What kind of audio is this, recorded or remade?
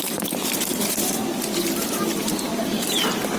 remade